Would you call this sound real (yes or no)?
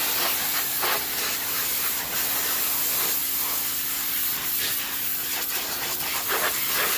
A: yes